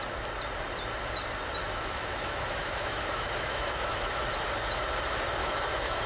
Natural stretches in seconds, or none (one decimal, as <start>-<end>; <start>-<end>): 0.0-1.6; 4.2-5.4